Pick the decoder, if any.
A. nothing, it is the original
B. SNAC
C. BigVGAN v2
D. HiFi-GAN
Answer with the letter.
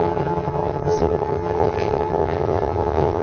D